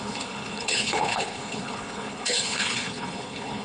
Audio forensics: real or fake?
fake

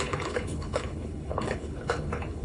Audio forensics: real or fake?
fake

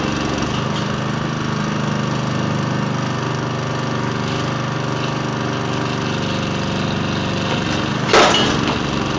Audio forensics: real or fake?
real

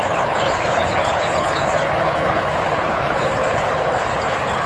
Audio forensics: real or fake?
fake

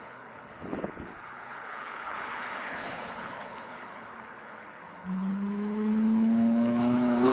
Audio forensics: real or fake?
fake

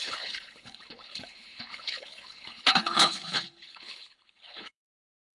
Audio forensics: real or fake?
fake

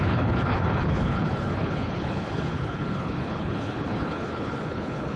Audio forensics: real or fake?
fake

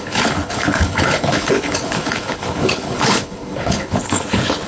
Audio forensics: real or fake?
fake